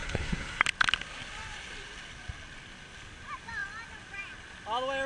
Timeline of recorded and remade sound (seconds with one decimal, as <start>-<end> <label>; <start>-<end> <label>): 0.0-0.6 remade; 0.6-5.1 recorded